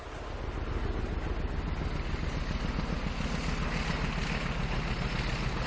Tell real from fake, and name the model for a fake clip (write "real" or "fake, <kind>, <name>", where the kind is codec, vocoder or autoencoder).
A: real